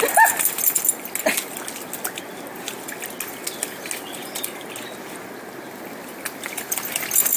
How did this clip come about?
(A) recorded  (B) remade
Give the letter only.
A